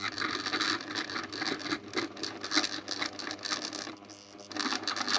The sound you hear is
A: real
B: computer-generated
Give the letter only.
A